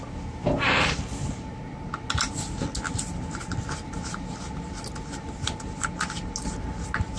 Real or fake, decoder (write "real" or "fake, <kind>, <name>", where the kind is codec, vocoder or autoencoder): real